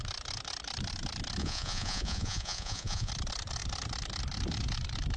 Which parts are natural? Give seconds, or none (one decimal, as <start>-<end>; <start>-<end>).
0.0-1.4; 3.1-5.2